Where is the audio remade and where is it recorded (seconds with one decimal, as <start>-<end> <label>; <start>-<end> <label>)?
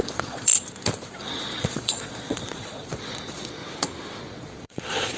0.0-0.5 remade; 0.5-1.2 recorded; 1.2-3.6 remade; 3.6-4.2 recorded; 4.2-5.2 remade